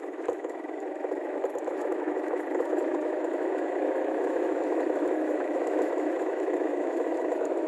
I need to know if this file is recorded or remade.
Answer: remade